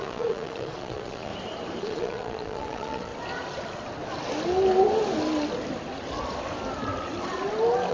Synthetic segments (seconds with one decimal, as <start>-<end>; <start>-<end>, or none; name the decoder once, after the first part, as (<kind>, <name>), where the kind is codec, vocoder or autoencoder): 0.0-1.3 (vocoder, Vocos); 1.8-3.1